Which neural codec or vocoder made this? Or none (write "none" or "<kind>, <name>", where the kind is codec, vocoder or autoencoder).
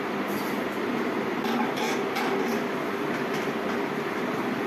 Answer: none